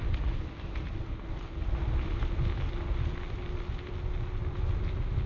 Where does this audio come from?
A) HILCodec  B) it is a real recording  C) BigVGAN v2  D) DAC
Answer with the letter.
B